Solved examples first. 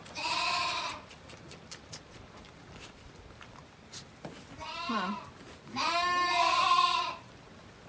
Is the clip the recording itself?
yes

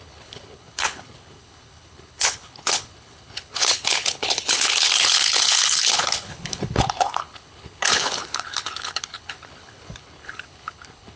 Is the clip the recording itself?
no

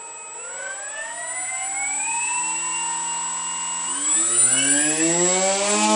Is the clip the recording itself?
yes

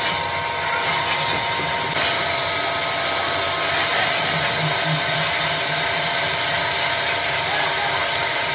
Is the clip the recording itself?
yes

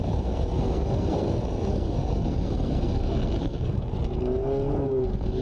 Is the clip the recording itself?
no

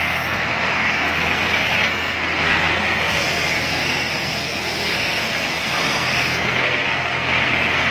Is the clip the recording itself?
no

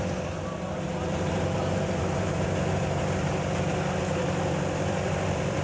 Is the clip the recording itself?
no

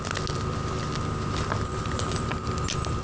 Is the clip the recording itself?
yes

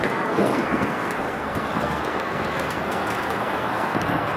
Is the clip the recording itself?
no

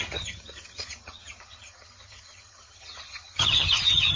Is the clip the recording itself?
no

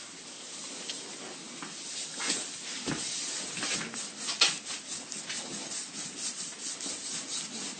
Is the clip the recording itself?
yes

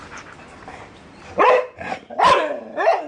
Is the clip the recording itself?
no